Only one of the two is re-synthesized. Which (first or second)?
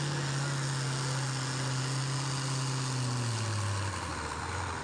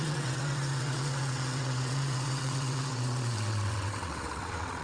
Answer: second